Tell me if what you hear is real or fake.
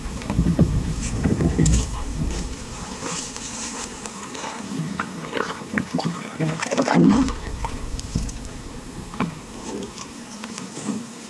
fake